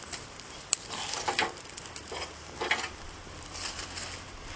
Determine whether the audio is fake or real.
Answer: real